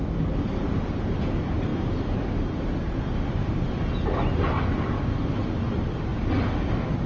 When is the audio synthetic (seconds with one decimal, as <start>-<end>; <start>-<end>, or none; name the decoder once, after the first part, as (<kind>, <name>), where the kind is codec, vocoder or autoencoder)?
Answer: none